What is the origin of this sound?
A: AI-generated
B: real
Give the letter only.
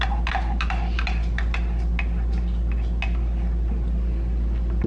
B